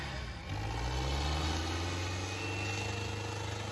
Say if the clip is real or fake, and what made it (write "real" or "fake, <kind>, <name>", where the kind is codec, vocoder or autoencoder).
real